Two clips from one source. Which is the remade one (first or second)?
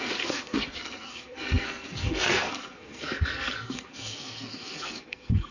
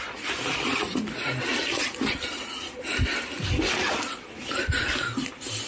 first